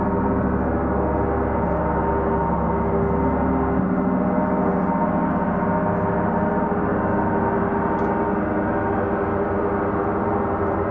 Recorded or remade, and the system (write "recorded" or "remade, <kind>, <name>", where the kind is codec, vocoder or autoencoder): recorded